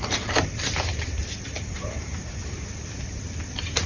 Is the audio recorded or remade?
remade